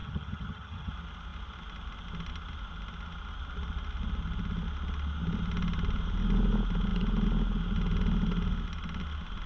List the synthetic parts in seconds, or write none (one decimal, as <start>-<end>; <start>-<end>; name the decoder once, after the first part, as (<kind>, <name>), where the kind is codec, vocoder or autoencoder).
0.0-0.9 (vocoder, HiFi-GAN)